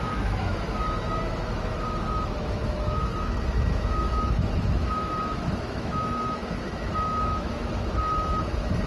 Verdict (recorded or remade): remade